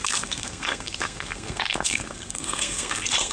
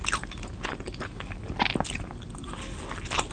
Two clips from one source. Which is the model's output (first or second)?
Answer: first